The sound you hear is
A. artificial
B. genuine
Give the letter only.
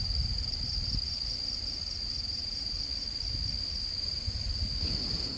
B